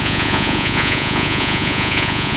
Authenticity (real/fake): fake